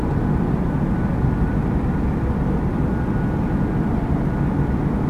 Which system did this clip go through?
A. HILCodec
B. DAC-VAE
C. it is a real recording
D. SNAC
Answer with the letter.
C